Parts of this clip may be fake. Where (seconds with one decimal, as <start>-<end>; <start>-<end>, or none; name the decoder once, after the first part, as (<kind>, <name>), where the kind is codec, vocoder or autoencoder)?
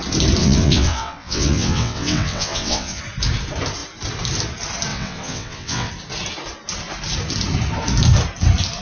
0.4-3.0 (vocoder, WaveNeXt); 4.9-5.9